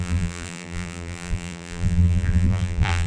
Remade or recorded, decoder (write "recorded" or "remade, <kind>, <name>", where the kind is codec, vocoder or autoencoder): remade, vocoder, BigVGAN v2